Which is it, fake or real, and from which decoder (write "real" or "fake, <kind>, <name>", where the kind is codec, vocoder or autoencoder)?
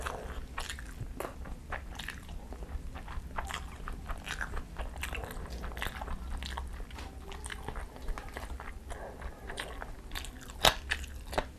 real